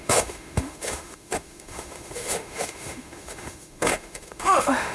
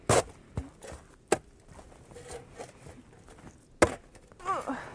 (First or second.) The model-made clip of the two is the first